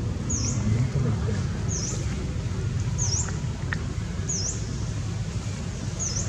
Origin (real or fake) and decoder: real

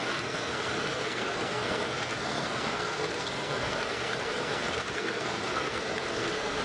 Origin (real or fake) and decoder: fake, codec, SNAC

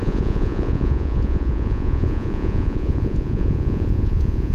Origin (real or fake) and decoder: fake, vocoder, Vocos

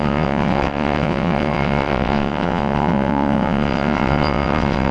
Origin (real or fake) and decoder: fake, vocoder, WaveNeXt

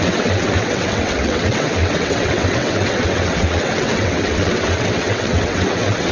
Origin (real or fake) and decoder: fake, vocoder, WaveNeXt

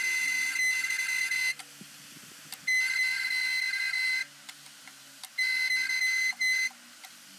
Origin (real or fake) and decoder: real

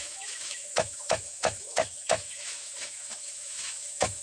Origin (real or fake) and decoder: fake, autoencoder, DAC-VAE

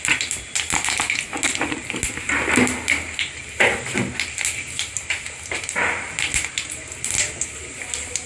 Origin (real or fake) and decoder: real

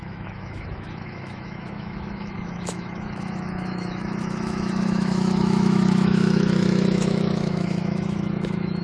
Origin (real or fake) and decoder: fake, autoencoder, DAC-VAE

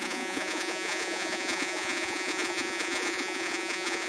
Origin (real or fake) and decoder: fake, vocoder, Vocos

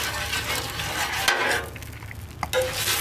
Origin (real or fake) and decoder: real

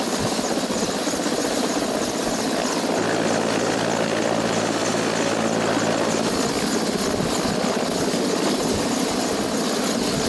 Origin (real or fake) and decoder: real